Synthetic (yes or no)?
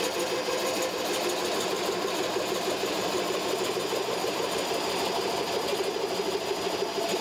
no